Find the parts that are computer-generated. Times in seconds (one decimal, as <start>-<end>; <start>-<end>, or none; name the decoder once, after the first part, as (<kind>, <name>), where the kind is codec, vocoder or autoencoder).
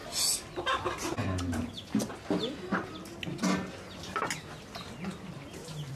none